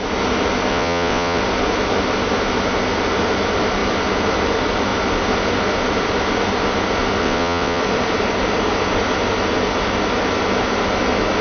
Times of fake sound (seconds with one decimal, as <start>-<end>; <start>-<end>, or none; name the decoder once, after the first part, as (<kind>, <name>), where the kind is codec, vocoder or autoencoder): 0.7-1.4 (vocoder, WaveNeXt); 7.2-7.8